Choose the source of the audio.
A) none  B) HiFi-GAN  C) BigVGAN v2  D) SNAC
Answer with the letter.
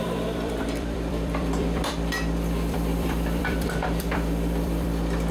C